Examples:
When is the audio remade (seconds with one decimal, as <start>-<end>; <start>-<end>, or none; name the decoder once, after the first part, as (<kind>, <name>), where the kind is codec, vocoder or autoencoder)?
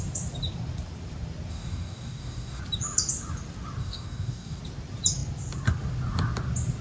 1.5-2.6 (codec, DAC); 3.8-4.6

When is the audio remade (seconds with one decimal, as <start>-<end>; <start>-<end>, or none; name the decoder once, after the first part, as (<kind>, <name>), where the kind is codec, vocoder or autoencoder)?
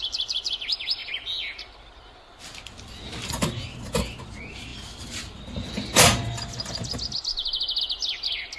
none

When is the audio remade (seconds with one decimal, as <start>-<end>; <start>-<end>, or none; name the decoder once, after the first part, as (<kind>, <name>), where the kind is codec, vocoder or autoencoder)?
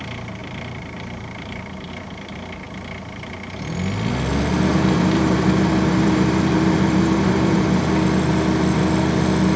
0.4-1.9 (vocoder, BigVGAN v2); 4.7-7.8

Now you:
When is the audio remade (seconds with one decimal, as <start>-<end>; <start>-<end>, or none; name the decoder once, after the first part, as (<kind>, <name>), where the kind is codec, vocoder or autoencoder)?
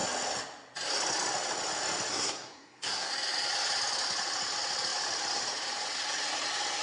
2.1-3.1 (codec, SNAC)